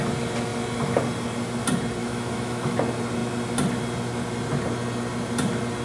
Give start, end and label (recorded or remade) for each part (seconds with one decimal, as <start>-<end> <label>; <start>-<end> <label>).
0.0-2.0 recorded; 2.0-2.8 remade; 2.8-5.8 recorded